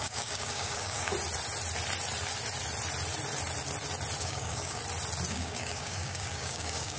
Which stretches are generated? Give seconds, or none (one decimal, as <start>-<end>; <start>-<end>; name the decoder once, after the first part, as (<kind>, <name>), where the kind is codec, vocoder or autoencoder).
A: 0.0-1.1 (codec, DAC); 4.2-4.8; 5.3-7.0